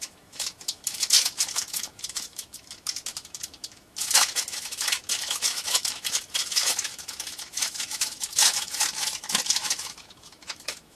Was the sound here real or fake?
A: fake